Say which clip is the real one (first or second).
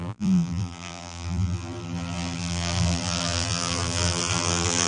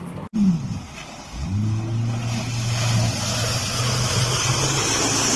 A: second